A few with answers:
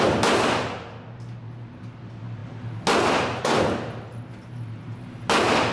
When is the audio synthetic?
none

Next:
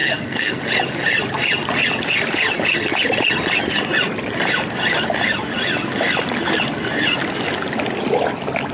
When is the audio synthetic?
0.0-0.6 (codec, SNAC)